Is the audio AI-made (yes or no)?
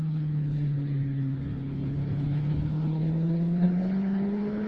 yes